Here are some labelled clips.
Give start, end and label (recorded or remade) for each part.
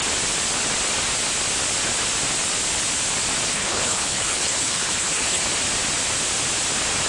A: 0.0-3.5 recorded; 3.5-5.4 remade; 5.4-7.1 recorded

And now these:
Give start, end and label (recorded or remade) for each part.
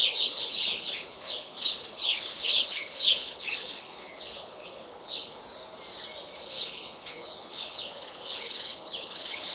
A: 0.0-5.4 remade; 5.4-6.4 recorded; 6.4-9.5 remade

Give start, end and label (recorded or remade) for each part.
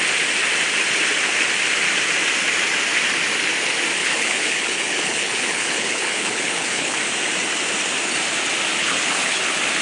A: 0.0-4.0 recorded; 4.0-7.0 remade; 7.0-8.8 recorded; 8.8-9.4 remade; 9.4-9.8 recorded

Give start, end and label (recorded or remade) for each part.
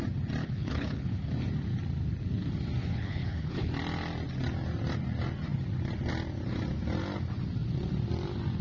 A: 0.0-0.4 recorded; 0.4-1.2 remade; 1.2-2.8 recorded; 2.8-3.7 remade; 3.7-8.6 recorded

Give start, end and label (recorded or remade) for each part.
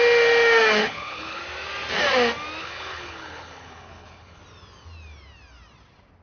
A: 0.0-0.8 recorded; 0.8-1.4 remade; 1.4-2.6 recorded; 2.6-4.4 remade; 4.4-6.2 recorded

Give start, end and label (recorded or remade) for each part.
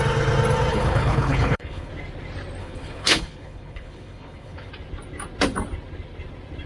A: 0.0-0.7 recorded; 0.7-1.9 remade; 1.9-2.6 recorded; 2.6-4.7 remade; 4.7-6.7 recorded